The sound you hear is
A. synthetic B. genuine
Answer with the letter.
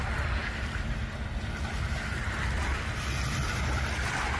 B